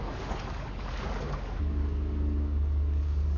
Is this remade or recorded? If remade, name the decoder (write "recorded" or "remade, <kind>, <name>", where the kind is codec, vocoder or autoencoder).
remade, codec, DAC